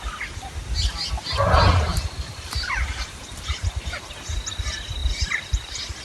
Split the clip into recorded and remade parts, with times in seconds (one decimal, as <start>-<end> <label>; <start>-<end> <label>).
0.0-1.9 recorded; 1.9-3.9 remade; 3.9-6.0 recorded